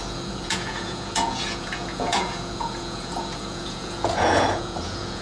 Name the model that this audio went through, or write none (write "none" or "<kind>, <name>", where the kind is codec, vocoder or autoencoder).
vocoder, Vocos